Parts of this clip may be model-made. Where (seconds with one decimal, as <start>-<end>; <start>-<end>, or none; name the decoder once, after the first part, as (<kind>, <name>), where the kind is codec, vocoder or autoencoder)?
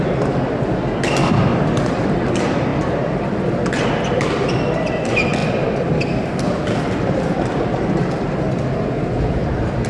1.5-2.3 (vocoder, BigVGAN v2); 5.4-8.6